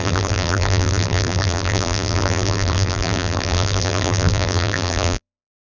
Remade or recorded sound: remade